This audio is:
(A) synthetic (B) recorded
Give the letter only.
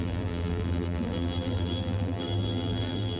A